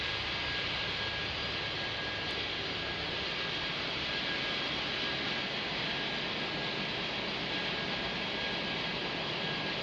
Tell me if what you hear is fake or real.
real